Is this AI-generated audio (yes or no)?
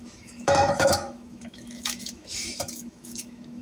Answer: yes